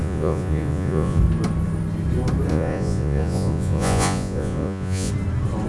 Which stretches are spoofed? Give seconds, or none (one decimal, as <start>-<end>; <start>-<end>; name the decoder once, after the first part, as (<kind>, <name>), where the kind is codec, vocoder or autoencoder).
0.0-1.2 (vocoder, Vocos); 2.5-5.1